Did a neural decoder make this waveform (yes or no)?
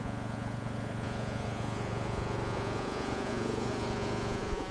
yes